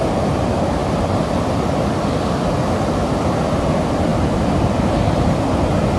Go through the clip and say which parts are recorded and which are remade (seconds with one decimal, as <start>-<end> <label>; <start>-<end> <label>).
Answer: 0.0-6.0 recorded